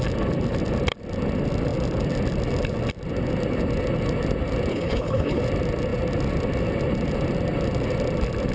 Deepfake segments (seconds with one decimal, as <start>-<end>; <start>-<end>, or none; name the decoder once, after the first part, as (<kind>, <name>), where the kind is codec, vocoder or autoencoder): 4.7-5.4 (codec, HILCodec)